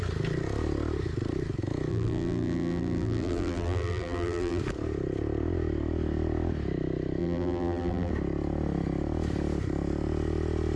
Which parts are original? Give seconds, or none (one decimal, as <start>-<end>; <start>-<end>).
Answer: 0.0-1.9; 4.6-7.2; 8.1-10.8